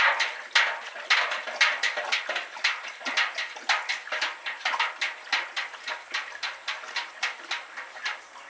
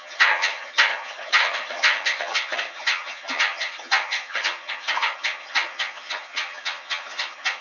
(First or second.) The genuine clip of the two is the first